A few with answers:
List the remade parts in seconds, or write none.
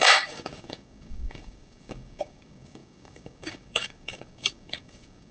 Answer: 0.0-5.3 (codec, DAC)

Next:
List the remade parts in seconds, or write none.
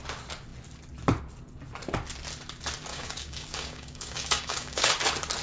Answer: 2.9-4.9 (codec, DAC)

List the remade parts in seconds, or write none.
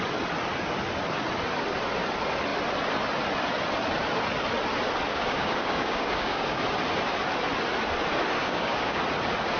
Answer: 5.1-6.6 (codec, DAC); 8.4-9.0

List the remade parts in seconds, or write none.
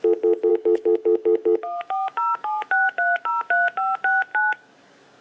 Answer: 0.5-3.3 (codec, DAC); 4.3-5.2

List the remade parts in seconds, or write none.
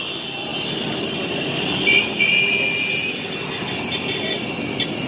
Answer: none